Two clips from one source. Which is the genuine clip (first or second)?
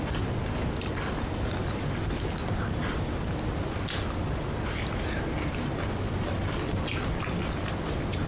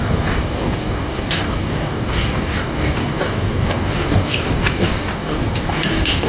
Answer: first